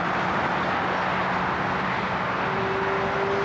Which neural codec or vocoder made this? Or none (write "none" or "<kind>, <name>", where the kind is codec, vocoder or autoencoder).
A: none